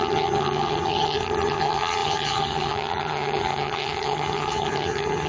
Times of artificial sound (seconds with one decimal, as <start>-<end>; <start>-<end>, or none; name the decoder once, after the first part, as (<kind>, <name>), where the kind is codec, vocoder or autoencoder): 0.0-5.3 (vocoder, HiFi-GAN)